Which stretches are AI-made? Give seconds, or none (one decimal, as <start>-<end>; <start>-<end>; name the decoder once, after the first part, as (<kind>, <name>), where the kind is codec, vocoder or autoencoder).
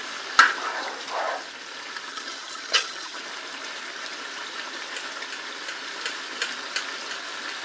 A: 2.1-3.2 (vocoder, HiFi-GAN)